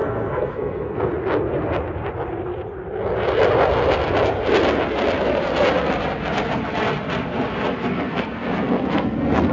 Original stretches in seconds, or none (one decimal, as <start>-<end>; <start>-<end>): 1.1-7.9